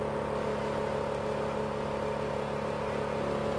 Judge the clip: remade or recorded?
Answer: recorded